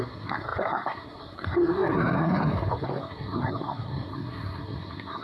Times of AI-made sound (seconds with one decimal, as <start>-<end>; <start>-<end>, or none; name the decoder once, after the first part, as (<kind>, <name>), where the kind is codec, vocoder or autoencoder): 0.0-5.2 (codec, SNAC)